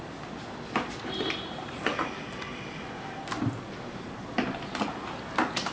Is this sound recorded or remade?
recorded